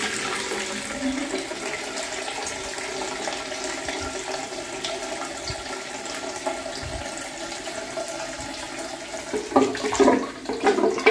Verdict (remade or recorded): recorded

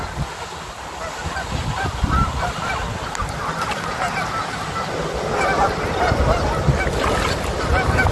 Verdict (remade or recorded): recorded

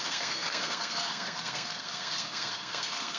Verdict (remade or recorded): remade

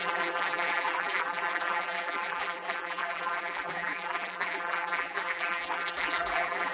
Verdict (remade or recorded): remade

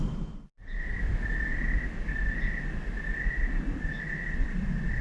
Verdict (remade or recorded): recorded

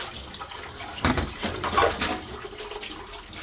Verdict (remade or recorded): recorded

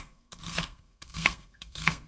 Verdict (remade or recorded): remade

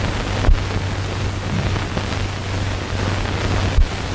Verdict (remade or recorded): recorded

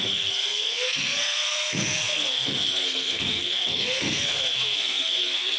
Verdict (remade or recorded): remade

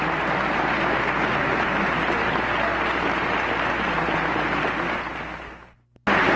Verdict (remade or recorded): recorded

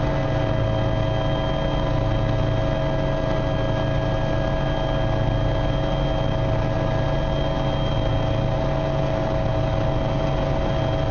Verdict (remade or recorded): recorded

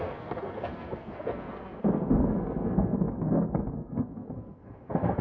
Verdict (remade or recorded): remade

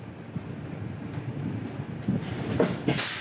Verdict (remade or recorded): recorded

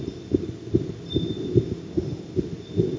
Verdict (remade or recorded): recorded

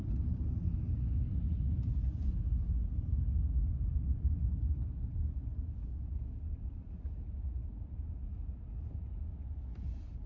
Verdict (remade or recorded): recorded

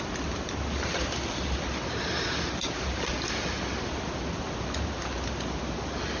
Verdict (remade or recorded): recorded